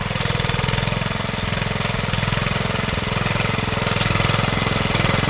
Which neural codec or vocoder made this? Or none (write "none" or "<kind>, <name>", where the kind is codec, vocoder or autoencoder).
none